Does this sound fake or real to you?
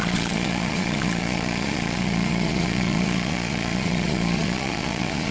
fake